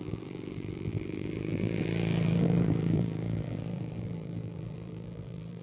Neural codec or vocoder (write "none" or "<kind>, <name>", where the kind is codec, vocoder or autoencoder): vocoder, BigVGAN v2